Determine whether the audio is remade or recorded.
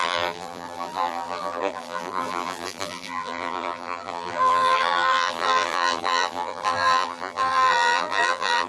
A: remade